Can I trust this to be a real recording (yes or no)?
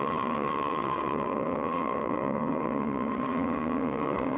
no